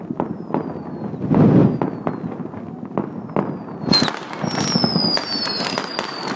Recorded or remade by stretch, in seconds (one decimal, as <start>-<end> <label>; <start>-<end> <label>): 0.0-6.4 recorded